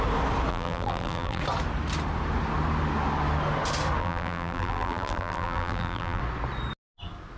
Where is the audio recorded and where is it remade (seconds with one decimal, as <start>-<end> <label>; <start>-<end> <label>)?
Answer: 0.0-0.5 recorded; 0.5-1.4 remade; 1.4-4.0 recorded; 4.0-6.2 remade; 6.2-7.4 recorded